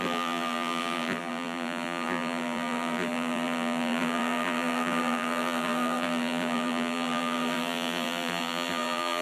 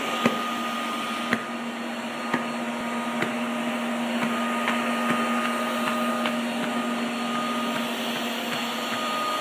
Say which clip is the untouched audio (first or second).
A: second